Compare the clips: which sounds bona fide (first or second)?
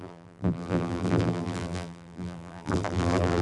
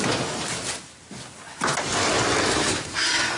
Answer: second